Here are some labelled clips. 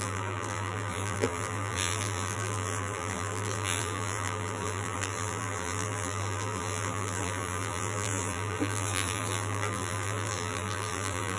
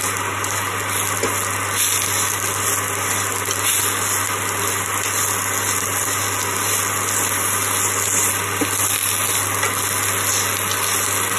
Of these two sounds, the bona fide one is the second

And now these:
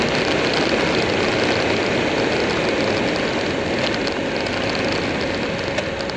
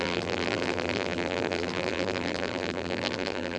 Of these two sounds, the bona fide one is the first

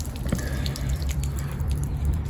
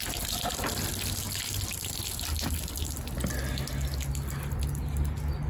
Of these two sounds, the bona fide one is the second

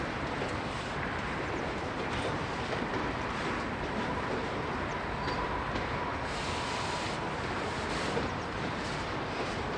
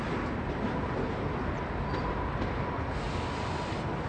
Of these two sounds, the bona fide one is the second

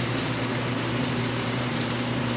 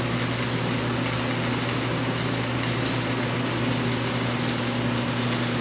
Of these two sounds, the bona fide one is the second